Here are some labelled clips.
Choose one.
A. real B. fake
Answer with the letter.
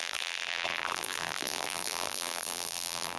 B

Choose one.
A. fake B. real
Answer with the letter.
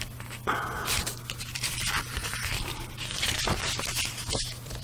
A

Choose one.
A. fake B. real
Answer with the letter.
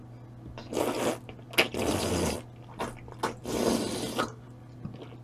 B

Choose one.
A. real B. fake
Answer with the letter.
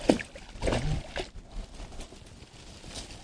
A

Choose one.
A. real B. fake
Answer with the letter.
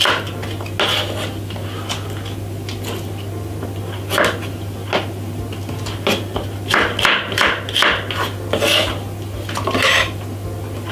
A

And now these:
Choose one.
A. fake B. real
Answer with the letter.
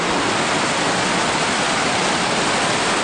B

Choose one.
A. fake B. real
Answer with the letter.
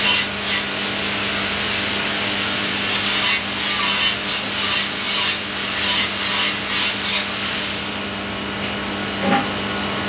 B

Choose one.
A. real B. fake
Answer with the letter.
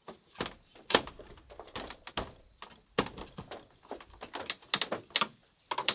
A